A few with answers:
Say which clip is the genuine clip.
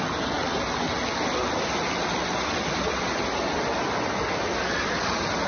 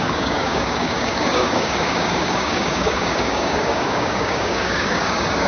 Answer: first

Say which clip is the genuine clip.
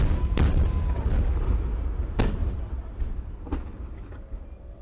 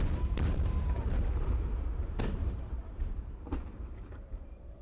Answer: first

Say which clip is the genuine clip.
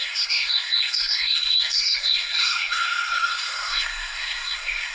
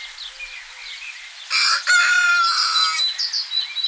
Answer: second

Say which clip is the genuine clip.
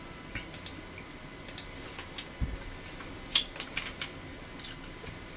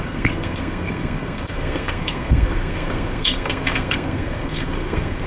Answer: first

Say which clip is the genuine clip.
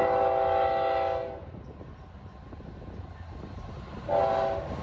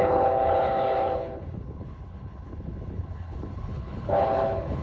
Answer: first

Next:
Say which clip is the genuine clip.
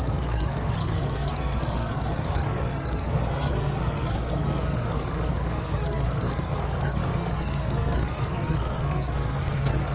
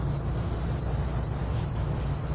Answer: second